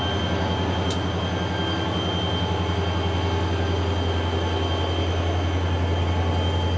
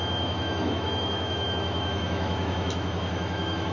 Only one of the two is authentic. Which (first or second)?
first